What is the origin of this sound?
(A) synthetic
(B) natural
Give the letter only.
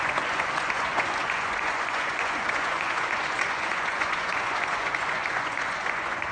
A